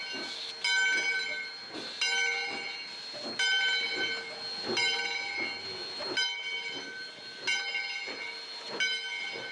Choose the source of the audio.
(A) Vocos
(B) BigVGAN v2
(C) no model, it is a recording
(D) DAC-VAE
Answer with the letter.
C